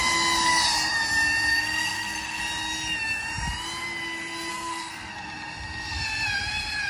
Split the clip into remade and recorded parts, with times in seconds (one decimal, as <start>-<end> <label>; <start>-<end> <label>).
0.0-1.5 recorded; 1.5-2.4 remade; 2.4-4.5 recorded; 4.5-5.1 remade; 5.1-6.9 recorded